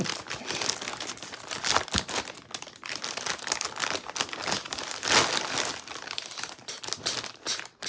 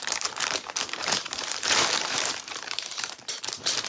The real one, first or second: first